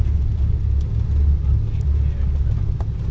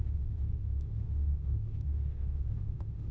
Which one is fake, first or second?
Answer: second